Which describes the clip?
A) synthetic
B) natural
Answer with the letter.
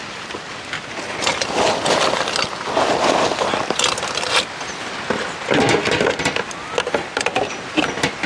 B